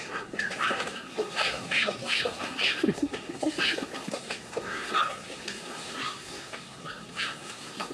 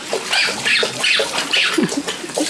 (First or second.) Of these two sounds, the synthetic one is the first